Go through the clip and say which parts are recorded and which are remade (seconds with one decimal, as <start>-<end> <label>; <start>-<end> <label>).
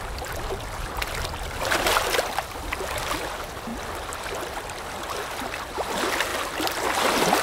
0.0-7.4 recorded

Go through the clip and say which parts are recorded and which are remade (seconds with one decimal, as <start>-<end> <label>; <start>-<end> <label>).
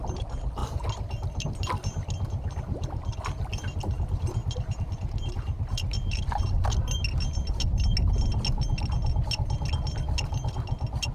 0.0-11.1 recorded